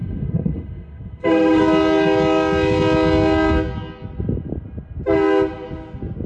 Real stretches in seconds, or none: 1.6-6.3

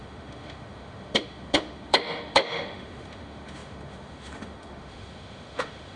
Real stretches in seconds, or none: none

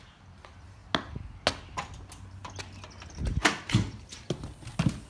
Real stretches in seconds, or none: 0.0-5.1

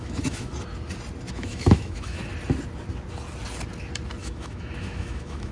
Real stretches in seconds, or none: 0.5-1.3; 2.3-4.2

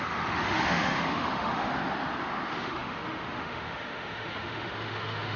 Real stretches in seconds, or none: 1.7-2.2

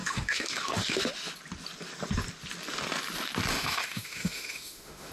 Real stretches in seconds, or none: 1.0-3.5

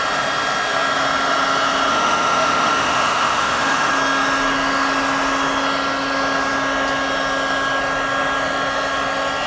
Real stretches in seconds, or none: 0.0-1.9; 3.9-9.5